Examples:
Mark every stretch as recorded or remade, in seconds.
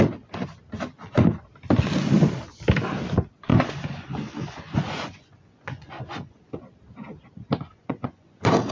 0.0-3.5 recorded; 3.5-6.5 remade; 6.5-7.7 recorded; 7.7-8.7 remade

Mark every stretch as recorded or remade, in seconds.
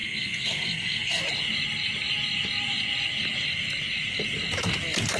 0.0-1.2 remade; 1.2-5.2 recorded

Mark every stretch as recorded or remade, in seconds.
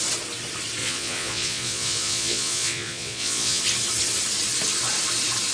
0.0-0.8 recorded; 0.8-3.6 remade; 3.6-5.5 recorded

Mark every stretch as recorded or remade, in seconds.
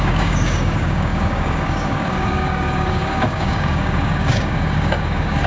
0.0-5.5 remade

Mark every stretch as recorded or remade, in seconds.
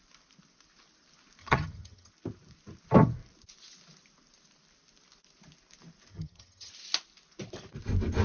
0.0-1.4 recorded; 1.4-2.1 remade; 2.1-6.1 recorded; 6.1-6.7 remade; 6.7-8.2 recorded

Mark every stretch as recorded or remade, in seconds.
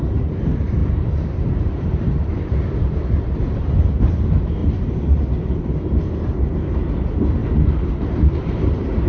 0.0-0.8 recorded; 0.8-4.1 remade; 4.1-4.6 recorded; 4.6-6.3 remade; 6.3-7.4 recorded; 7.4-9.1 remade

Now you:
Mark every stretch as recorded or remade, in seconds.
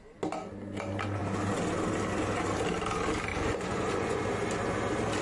0.0-3.3 recorded; 3.3-4.2 remade; 4.2-5.2 recorded